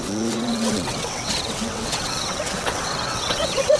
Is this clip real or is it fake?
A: fake